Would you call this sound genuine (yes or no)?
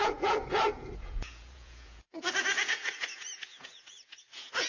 no